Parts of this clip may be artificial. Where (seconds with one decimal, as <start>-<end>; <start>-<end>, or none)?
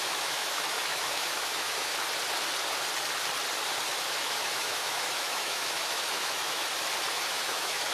0.0-1.9; 4.1-6.6; 7.1-7.9